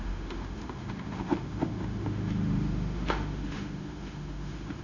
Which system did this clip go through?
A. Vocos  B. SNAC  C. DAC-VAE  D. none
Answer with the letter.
C